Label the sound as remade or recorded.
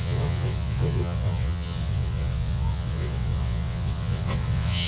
remade